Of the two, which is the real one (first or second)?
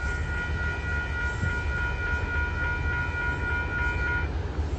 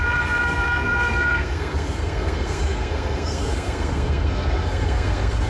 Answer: first